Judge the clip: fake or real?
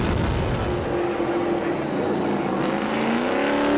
real